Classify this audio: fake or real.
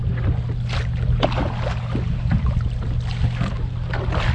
real